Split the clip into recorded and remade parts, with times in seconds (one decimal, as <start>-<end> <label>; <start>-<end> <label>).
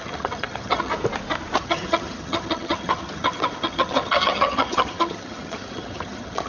0.0-0.9 remade; 0.9-1.6 recorded; 1.6-6.5 remade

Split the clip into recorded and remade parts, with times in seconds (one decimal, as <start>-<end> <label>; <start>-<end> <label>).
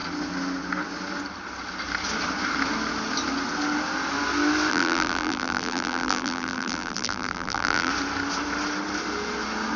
0.0-4.7 recorded; 4.7-7.9 remade; 7.9-9.8 recorded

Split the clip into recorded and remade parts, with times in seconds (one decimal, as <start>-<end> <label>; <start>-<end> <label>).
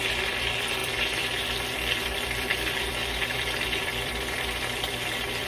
0.0-5.5 remade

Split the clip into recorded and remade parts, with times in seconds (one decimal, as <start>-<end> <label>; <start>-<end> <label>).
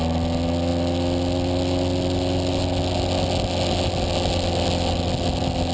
0.0-5.7 recorded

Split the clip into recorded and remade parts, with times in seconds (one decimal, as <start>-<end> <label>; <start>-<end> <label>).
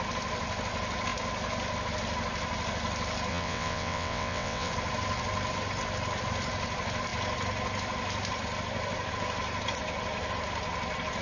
0.0-3.3 recorded; 3.3-4.7 remade; 4.7-11.2 recorded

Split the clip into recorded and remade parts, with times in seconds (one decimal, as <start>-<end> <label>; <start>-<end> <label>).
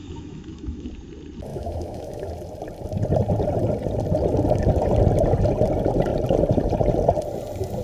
0.0-0.9 remade; 0.9-1.5 recorded; 1.5-2.3 remade; 2.3-7.8 recorded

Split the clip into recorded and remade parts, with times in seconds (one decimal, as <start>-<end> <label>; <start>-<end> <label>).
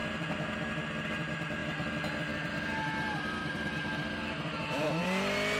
0.0-5.6 recorded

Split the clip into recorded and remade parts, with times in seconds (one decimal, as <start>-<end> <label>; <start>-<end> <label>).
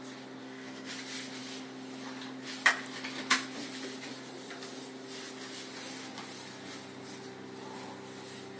0.0-0.4 recorded; 0.4-0.9 remade; 0.9-8.6 recorded